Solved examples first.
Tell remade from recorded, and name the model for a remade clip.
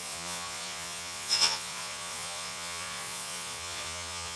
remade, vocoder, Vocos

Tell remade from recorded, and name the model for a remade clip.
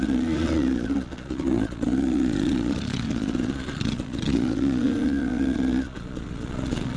remade, vocoder, Vocos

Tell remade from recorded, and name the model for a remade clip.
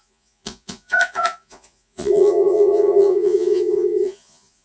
remade, vocoder, Vocos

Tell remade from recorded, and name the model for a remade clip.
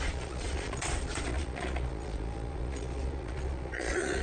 remade, vocoder, Vocos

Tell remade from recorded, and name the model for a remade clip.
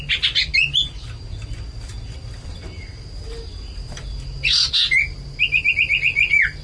recorded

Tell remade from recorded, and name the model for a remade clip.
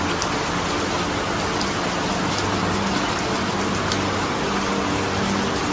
recorded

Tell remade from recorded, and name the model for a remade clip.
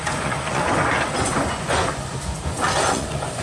remade, vocoder, Vocos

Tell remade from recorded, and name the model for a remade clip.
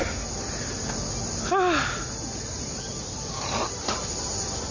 recorded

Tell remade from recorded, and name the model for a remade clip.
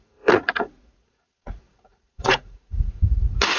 remade, vocoder, Vocos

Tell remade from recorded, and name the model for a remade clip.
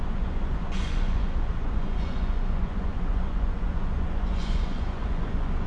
remade, vocoder, Vocos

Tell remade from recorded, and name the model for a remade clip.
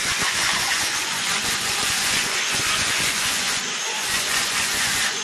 remade, vocoder, Vocos